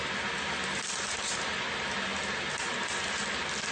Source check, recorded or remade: recorded